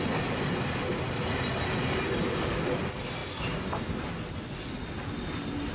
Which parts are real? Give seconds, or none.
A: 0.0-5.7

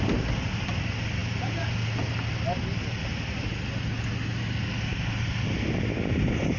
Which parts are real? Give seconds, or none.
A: 0.0-6.6